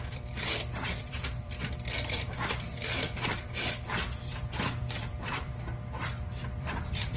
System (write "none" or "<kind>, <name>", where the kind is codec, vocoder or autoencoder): vocoder, BigVGAN v2